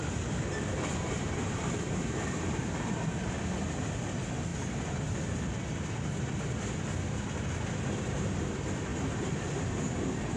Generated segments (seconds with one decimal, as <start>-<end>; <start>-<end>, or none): 0.9-2.6